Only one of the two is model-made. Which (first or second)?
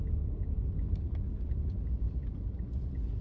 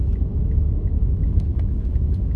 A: second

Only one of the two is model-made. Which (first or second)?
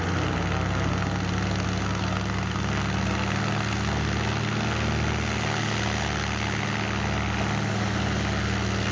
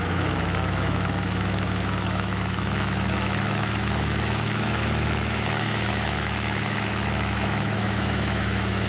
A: second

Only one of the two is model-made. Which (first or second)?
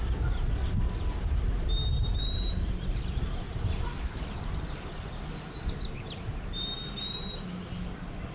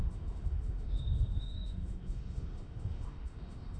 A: second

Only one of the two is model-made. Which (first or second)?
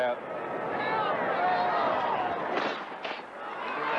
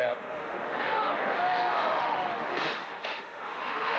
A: second